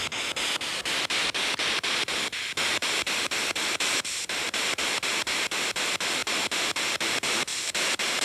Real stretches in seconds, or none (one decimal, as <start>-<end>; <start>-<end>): 0.0-2.7; 5.2-7.5